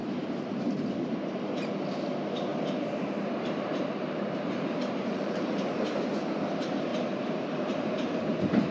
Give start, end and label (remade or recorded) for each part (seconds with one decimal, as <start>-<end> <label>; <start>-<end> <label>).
0.0-1.4 remade; 1.4-2.5 recorded; 2.5-5.8 remade; 5.8-6.9 recorded; 6.9-8.7 remade